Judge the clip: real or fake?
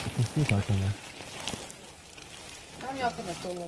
real